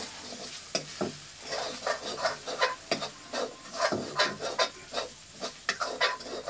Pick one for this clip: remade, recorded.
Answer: recorded